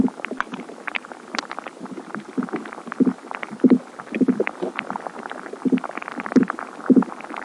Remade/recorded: recorded